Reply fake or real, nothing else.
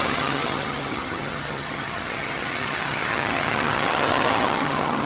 fake